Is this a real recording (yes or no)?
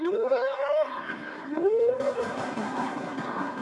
no